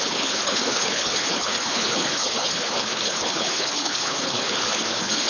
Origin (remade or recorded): remade